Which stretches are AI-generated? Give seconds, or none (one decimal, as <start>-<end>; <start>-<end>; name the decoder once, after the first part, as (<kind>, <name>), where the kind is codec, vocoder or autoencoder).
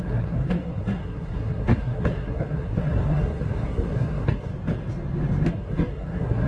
0.0-4.5 (codec, SNAC); 5.5-6.5